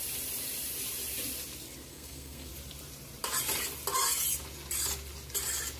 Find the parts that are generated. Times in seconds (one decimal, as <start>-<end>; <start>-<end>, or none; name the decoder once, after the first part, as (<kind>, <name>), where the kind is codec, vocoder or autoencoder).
1.9-2.5 (codec, SNAC)